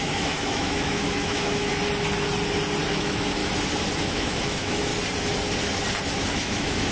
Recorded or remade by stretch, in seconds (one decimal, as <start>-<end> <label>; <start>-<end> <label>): 0.0-1.7 remade; 1.7-2.9 recorded; 2.9-3.4 remade; 3.4-4.0 recorded; 4.0-4.9 remade; 4.9-6.3 recorded; 6.3-6.9 remade